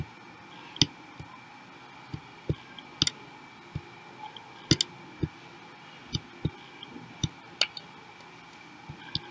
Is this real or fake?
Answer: real